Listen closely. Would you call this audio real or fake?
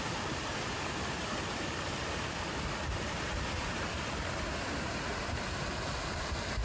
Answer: fake